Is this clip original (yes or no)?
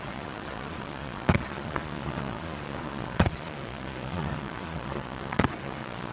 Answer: no